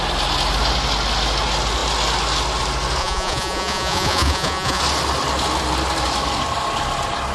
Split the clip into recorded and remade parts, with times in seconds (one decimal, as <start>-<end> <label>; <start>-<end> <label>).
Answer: 0.0-3.0 recorded; 3.0-4.8 remade; 4.8-7.3 recorded